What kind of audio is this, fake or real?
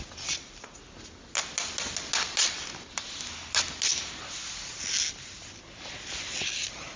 real